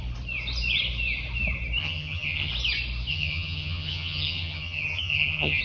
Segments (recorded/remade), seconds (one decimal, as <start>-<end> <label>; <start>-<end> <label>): 0.0-1.8 recorded; 1.8-2.5 remade; 2.5-3.1 recorded; 3.1-5.6 remade

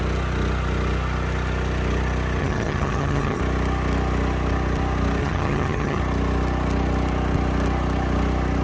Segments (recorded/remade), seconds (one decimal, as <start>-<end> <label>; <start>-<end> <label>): 0.0-2.4 recorded; 2.4-3.4 remade; 3.4-5.2 recorded; 5.2-6.0 remade; 6.0-8.6 recorded

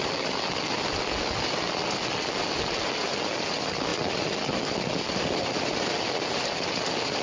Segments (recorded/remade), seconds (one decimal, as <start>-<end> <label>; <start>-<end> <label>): 0.0-7.2 recorded

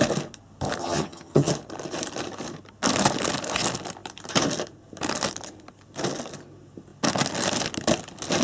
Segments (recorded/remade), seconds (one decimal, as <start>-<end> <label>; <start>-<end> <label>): 0.0-0.8 recorded; 0.8-1.5 remade; 1.5-8.4 recorded

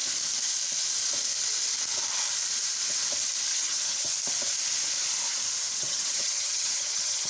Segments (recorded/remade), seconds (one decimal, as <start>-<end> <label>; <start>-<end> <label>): 0.0-3.5 recorded; 3.5-4.1 remade; 4.1-5.7 recorded; 5.7-7.3 remade

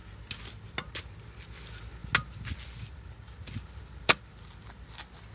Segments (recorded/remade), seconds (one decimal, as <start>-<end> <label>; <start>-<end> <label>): 0.0-5.3 recorded